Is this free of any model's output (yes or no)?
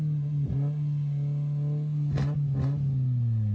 yes